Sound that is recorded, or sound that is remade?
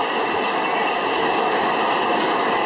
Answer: recorded